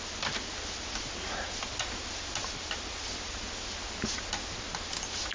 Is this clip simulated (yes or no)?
no